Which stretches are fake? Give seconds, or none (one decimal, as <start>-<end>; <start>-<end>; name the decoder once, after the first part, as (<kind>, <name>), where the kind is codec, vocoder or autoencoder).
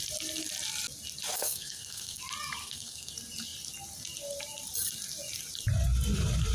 1.3-2.2 (codec, SNAC); 2.6-3.1